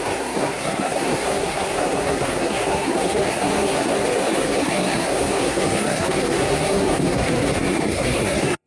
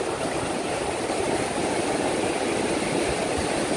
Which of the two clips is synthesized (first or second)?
first